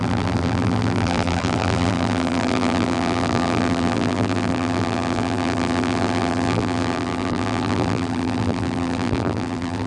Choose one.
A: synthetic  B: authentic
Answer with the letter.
A